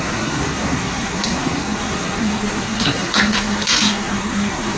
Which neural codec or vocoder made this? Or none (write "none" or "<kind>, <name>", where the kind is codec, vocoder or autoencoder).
codec, SNAC